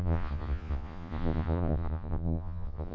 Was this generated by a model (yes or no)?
yes